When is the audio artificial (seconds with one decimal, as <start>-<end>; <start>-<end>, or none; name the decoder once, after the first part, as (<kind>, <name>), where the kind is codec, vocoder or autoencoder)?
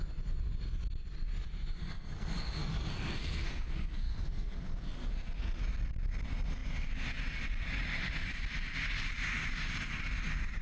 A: 1.8-5.6 (codec, SNAC)